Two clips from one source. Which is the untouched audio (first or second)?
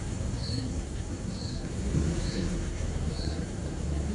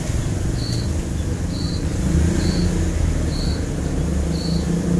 second